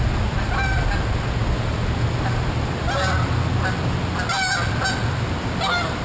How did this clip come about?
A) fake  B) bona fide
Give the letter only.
B